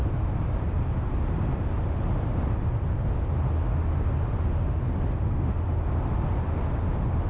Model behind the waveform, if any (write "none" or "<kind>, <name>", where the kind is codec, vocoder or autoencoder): none